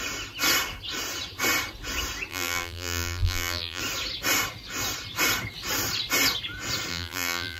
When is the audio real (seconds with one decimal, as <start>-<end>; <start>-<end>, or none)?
0.0-2.3; 3.8-6.9